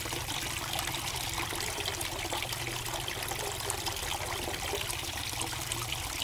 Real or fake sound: real